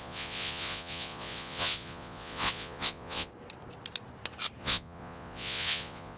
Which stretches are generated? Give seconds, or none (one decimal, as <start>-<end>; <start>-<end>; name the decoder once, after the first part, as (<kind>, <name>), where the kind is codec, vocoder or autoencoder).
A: 0.0-3.3 (vocoder, Vocos); 4.6-6.2